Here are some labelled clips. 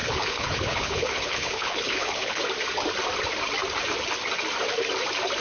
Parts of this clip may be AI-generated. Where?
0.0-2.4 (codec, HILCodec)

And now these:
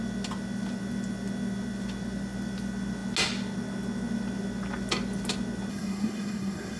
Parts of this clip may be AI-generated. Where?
5.7-6.8 (codec, SNAC)

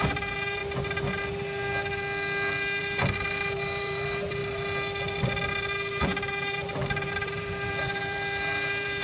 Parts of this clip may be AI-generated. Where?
0.0-0.6 (vocoder, BigVGAN v2); 2.8-4.4; 6.0-9.0

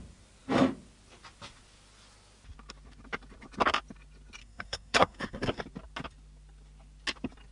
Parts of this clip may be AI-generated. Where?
4.4-5.6 (codec, SNAC)

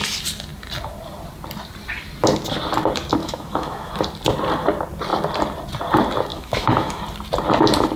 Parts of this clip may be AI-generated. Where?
3.2-3.9 (autoencoder, DAC-VAE); 6.3-7.0

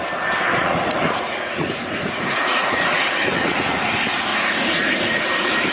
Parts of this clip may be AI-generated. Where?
0.5-3.9 (vocoder, Vocos); 4.3-5.2